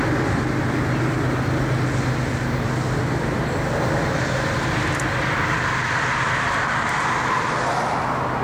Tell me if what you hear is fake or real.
real